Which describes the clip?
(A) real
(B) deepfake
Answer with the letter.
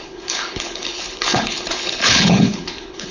B